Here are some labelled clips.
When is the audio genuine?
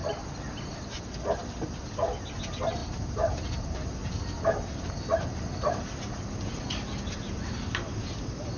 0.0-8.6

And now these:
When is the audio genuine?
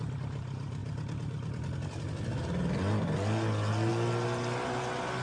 0.0-5.2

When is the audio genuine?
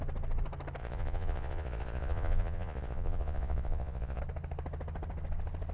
0.0-0.8; 4.2-5.7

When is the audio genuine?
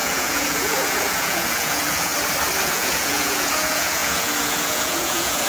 2.1-2.6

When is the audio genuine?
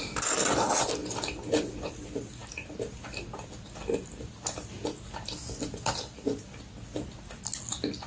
0.0-8.1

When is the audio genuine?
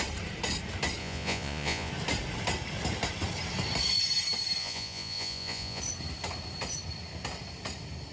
0.0-1.0; 1.9-4.6; 5.8-8.1